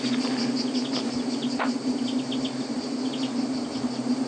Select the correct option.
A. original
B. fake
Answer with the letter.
A